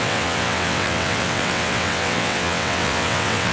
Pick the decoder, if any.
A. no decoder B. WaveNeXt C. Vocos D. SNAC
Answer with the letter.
B